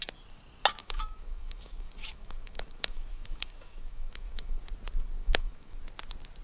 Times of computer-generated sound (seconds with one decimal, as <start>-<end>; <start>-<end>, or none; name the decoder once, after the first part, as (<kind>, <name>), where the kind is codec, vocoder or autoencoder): 0.8-4.6 (autoencoder, DAC-VAE); 5.2-5.8